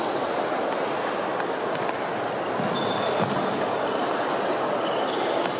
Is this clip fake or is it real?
real